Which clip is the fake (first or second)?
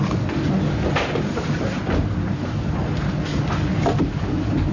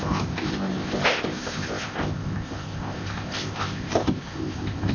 second